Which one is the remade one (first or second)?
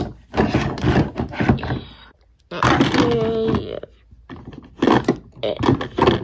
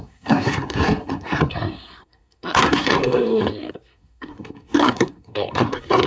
second